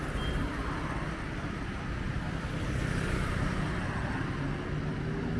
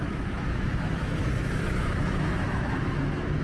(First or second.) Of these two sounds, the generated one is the second